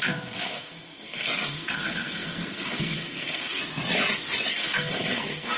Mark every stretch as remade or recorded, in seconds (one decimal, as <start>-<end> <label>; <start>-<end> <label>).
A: 0.0-3.6 remade; 3.6-4.5 recorded; 4.5-5.6 remade